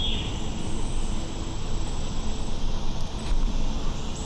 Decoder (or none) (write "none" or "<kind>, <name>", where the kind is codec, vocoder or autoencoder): none